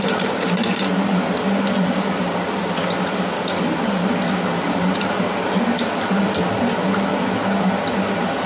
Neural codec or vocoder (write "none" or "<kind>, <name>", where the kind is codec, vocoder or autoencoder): none